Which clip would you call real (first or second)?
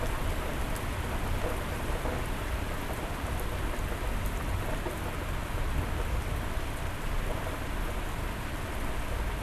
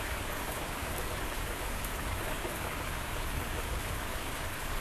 first